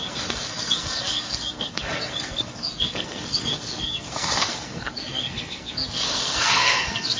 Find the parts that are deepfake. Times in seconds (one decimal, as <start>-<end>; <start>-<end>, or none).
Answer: 0.0-7.2